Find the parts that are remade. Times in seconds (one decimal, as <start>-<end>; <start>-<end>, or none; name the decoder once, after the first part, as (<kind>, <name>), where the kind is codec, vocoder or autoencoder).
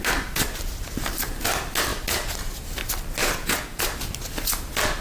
3.2-3.8 (vocoder, Vocos)